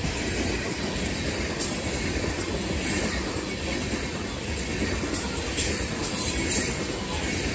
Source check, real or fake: real